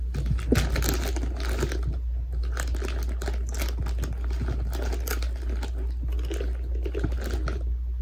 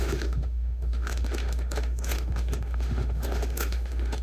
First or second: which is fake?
second